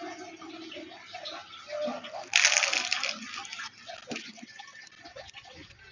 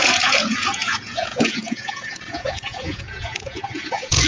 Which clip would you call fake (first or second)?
second